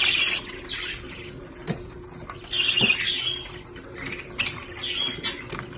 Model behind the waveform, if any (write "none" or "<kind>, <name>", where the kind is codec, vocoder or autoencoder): none